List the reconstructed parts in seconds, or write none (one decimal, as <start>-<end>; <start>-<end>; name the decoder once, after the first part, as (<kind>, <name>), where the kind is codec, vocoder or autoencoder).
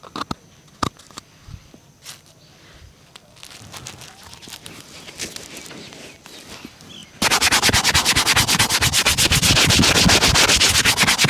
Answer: none